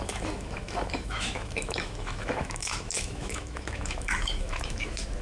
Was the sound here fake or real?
fake